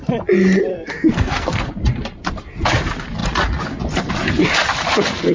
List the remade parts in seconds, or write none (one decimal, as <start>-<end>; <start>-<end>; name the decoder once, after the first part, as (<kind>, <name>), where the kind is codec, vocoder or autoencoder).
0.7-1.7 (codec, SNAC)